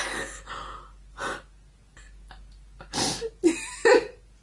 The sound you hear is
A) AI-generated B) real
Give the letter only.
B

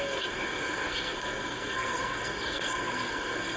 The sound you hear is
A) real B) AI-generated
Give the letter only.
B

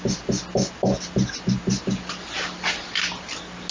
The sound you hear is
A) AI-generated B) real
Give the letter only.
B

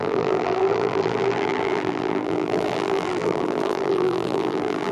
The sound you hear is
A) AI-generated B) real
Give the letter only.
A